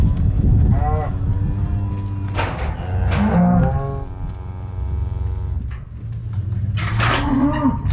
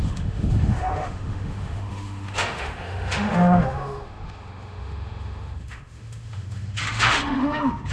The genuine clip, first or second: first